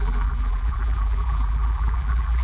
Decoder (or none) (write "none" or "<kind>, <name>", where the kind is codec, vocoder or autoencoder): vocoder, BigVGAN v2